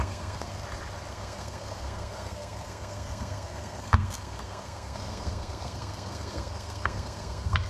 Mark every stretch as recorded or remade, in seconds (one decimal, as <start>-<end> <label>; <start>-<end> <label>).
0.0-0.6 remade; 0.6-1.1 recorded; 1.1-7.7 remade